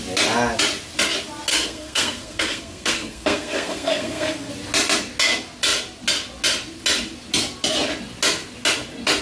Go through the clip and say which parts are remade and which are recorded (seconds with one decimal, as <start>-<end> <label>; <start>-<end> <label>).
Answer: 0.0-1.5 recorded; 1.5-4.5 remade; 4.5-9.2 recorded